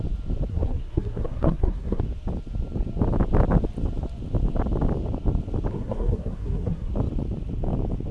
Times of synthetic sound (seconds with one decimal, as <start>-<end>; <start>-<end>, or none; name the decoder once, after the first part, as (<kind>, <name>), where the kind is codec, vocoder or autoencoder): 0.5-2.0 (codec, SNAC); 5.7-6.9